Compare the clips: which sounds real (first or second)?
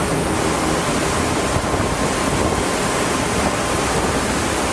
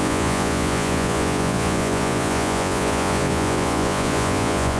first